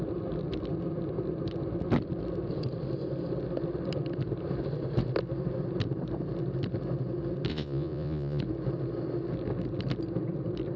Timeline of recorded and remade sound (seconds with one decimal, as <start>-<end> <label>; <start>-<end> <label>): 0.0-7.5 recorded; 7.5-8.4 remade; 8.4-10.8 recorded